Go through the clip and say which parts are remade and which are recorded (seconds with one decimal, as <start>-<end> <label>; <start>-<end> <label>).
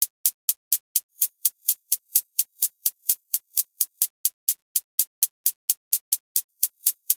0.0-1.1 recorded; 1.1-4.0 remade; 4.0-6.5 recorded; 6.5-7.2 remade